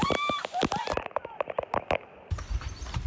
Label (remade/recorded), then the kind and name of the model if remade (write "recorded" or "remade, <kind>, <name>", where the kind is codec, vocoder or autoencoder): recorded